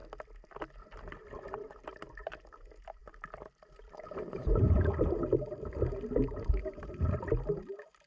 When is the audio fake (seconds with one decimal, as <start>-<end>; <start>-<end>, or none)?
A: 1.7-8.1